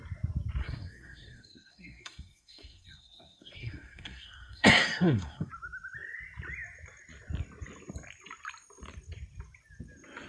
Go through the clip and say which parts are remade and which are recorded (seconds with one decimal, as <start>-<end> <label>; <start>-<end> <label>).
0.0-0.6 recorded; 0.6-5.5 remade; 5.5-10.3 recorded